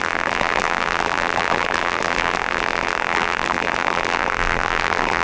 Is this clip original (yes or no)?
no